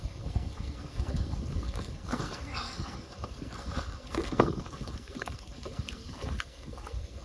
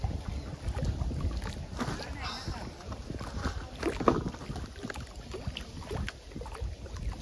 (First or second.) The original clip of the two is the second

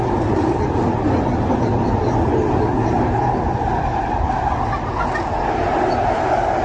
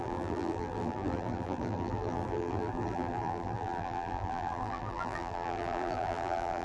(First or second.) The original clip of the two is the first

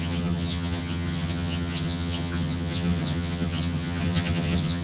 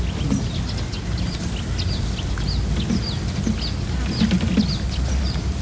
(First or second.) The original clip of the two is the second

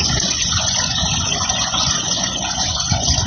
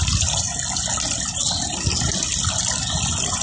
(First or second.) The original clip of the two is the second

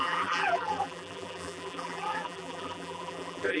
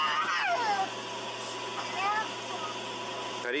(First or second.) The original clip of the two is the second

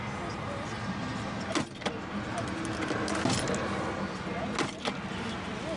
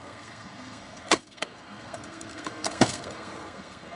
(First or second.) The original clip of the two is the first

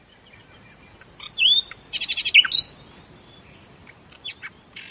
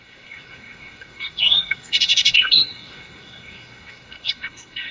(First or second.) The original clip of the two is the first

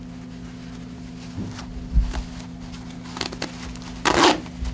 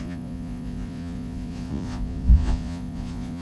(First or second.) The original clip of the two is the first